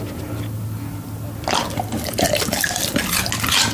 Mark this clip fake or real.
real